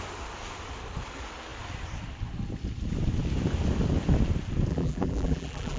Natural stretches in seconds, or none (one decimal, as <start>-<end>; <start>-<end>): 0.0-4.7